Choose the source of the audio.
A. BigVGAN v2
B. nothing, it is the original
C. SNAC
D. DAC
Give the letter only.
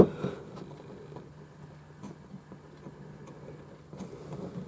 B